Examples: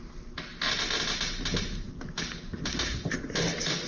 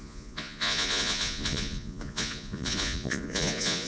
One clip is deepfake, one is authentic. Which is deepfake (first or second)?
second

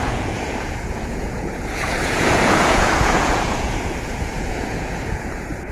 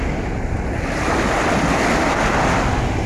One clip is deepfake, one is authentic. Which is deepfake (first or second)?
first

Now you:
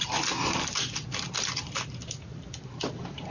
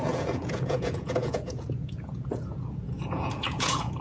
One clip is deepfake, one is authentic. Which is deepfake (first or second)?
second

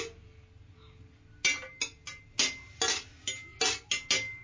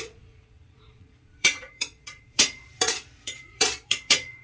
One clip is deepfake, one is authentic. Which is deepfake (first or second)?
second